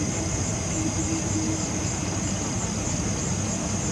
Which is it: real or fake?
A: real